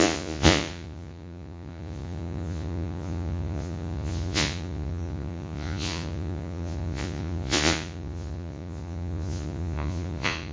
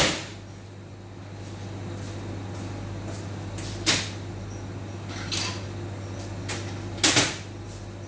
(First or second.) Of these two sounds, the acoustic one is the second